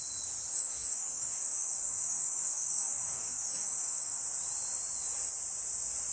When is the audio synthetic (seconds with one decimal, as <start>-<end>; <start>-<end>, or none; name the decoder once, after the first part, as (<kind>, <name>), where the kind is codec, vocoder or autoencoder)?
0.5-4.2 (codec, DAC)